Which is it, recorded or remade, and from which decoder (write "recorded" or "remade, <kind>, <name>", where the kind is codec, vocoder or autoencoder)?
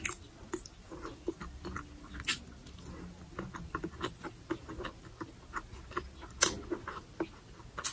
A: recorded